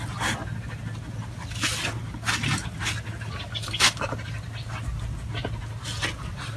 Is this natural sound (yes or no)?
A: yes